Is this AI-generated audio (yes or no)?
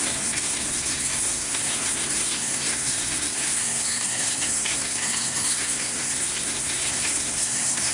yes